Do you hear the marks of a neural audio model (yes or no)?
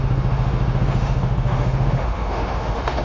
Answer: yes